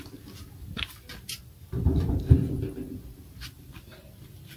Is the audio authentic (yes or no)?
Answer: yes